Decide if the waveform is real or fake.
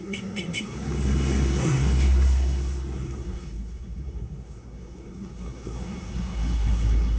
fake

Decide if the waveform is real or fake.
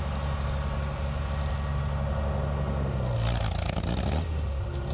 real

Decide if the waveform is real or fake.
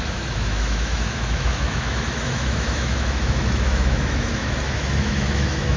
fake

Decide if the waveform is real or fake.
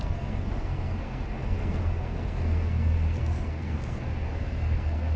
fake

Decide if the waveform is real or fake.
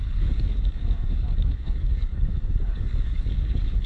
fake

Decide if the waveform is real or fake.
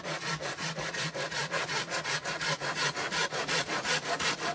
fake